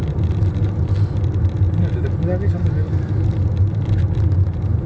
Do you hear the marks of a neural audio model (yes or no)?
no